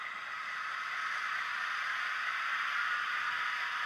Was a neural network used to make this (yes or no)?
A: yes